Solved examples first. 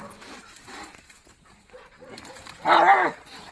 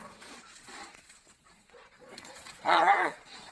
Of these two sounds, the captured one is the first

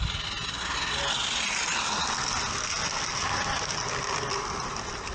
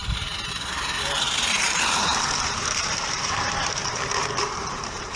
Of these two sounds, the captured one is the first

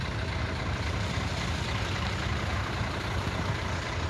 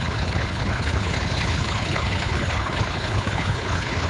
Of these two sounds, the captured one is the first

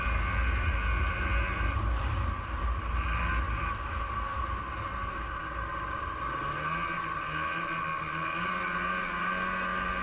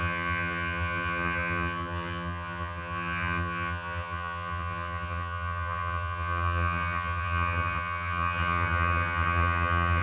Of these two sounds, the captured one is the first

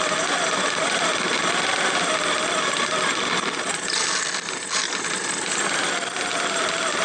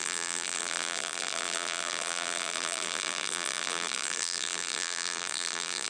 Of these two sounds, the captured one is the first